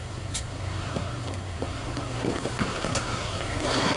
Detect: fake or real fake